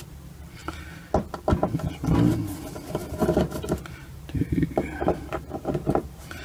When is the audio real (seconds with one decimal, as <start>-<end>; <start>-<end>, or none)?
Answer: 0.0-3.0